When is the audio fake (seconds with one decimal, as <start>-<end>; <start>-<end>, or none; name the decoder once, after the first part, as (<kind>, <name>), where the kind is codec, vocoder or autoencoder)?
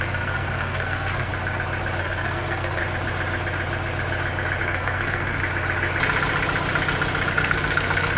0.0-1.3 (codec, SNAC); 2.0-2.8; 4.6-5.4; 7.3-8.2